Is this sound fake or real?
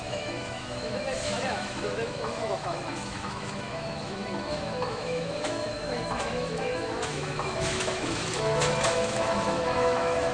fake